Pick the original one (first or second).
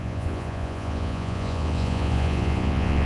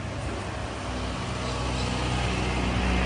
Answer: second